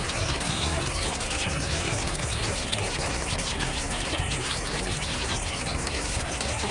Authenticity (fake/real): fake